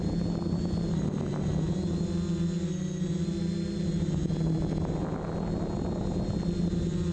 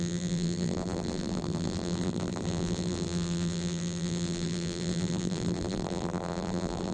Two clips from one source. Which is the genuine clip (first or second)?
first